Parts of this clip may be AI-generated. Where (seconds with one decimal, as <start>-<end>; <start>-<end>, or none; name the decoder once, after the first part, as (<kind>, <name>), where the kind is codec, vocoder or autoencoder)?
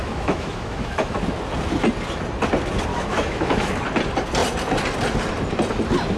0.0-1.2 (autoencoder, DAC-VAE); 2.9-3.7